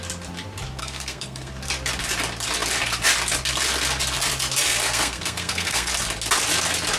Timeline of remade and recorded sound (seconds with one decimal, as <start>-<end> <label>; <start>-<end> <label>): 0.0-0.8 recorded; 0.8-1.5 remade; 1.5-4.8 recorded; 4.8-5.9 remade; 5.9-7.0 recorded